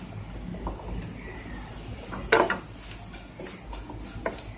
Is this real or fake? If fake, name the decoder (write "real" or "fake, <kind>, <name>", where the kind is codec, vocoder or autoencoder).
real